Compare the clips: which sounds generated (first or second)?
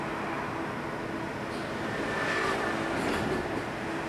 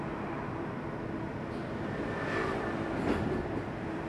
second